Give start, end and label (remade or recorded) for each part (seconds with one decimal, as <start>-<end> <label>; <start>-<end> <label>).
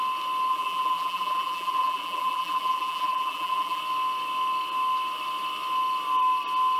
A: 0.0-0.5 recorded; 0.5-3.8 remade; 3.8-6.8 recorded